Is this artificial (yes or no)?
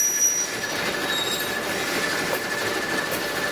no